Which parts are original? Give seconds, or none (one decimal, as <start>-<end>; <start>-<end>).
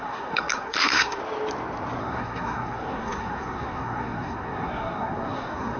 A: 1.2-2.0